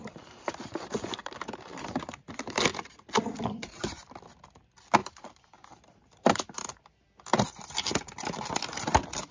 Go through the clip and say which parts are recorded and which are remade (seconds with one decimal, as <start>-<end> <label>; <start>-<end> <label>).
0.0-2.3 remade; 2.3-2.7 recorded; 2.7-4.1 remade; 4.1-5.0 recorded; 5.0-6.7 remade; 6.7-9.3 recorded